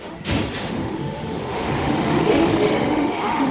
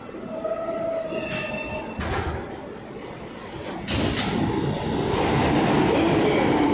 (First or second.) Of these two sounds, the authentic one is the second